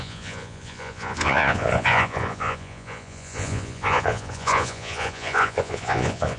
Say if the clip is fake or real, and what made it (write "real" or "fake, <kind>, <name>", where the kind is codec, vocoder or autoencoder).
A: fake, vocoder, Vocos